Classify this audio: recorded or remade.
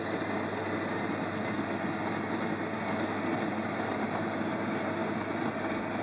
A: recorded